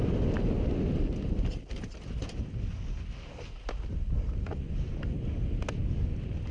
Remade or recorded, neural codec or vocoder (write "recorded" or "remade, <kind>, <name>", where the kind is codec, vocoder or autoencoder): recorded